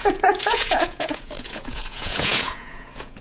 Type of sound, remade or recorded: remade